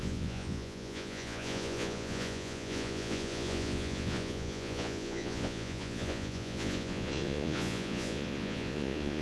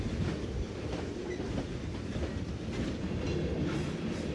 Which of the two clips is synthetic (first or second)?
first